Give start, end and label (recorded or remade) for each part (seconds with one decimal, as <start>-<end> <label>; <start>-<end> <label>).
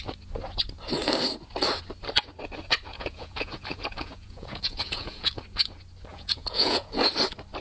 0.0-2.9 recorded; 2.9-5.3 remade; 5.3-6.1 recorded; 6.1-7.0 remade; 7.0-7.6 recorded